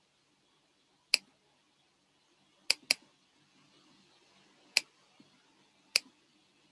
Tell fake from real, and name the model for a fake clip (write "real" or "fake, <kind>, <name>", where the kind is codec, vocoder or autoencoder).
real